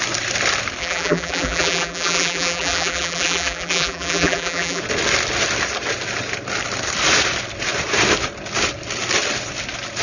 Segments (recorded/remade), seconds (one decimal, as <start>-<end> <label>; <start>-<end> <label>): 0.0-0.8 recorded; 0.8-4.8 remade; 4.8-10.0 recorded